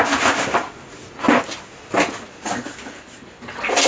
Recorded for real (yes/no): yes